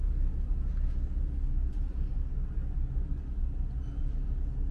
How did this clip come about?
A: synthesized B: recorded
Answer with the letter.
B